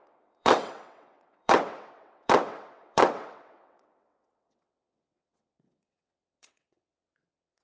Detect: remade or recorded remade